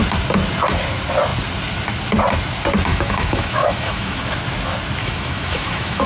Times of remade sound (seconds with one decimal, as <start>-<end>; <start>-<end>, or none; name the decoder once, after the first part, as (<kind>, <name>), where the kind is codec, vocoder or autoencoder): 2.9-4.2 (autoencoder, DAC-VAE); 5.0-6.1